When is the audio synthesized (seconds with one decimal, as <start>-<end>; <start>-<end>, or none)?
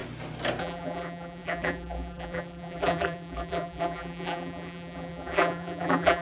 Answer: 0.6-6.2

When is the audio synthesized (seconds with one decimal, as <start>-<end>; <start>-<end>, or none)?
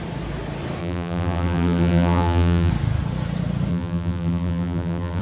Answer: 0.8-2.7; 3.7-5.2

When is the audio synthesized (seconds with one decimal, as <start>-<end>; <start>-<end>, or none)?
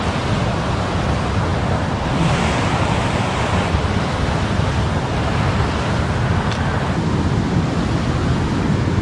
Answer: none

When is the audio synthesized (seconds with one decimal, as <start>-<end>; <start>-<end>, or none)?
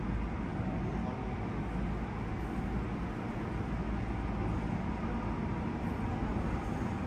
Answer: none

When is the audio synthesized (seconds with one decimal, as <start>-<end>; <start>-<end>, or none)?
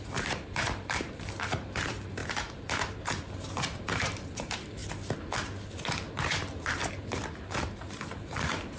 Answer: 0.0-2.2; 3.3-4.8; 8.0-8.8